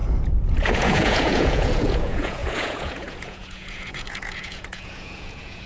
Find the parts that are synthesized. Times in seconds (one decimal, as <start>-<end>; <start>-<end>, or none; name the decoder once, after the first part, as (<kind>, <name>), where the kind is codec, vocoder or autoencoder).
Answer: 0.0-5.7 (vocoder, Vocos)